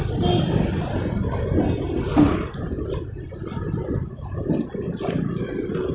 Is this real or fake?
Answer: real